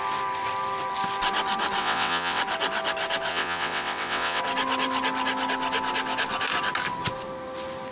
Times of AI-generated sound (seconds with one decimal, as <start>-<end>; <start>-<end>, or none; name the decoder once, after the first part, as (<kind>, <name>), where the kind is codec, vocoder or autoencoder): 1.8-2.4 (vocoder, WaveNeXt); 3.3-4.4